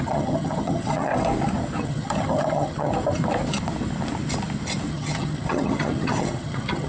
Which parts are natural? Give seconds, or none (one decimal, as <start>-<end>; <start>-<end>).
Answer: 1.1-1.8; 2.9-4.9